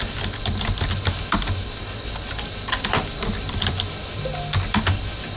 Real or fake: real